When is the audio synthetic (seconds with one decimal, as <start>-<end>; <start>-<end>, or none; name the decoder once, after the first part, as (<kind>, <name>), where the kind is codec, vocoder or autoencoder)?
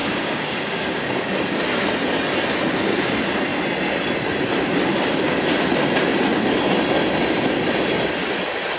0.0-1.0 (codec, DAC)